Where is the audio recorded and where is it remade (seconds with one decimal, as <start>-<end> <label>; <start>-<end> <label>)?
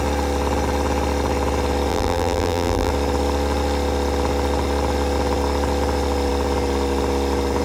0.0-1.9 recorded; 1.9-2.9 remade; 2.9-7.6 recorded